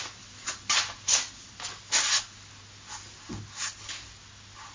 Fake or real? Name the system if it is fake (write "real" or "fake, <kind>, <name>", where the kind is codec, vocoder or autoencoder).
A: real